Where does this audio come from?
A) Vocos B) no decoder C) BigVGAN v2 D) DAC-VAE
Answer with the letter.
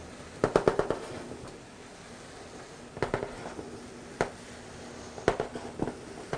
B